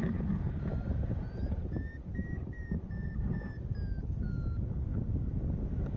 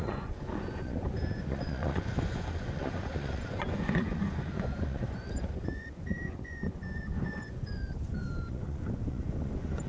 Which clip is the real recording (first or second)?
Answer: first